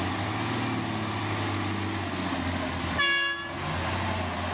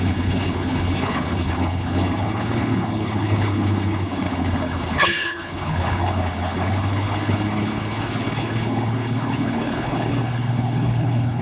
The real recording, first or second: first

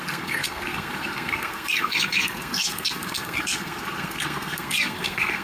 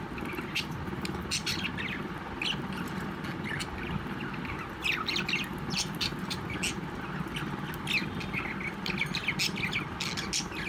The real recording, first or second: second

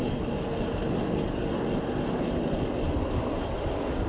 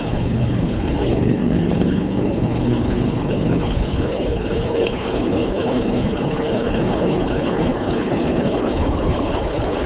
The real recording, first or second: first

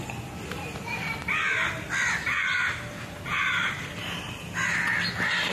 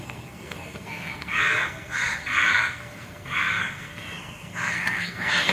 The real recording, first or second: first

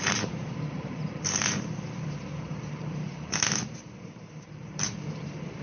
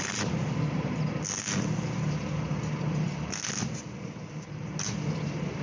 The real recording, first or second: second